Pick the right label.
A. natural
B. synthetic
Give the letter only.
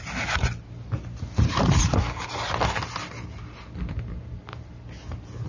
A